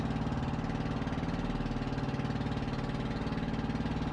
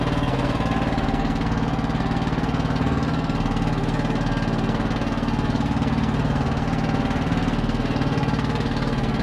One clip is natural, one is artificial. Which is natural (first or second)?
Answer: first